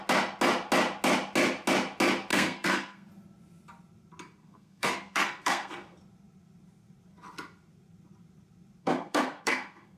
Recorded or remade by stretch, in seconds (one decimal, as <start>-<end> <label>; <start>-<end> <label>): 0.0-2.3 recorded; 2.3-3.1 remade; 3.1-4.4 recorded; 4.4-6.0 remade; 6.0-8.8 recorded; 8.8-10.0 remade